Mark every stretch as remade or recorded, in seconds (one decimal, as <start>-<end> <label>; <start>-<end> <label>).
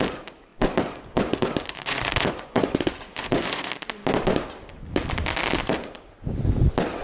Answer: 0.0-0.5 recorded; 0.5-3.7 remade; 3.7-7.0 recorded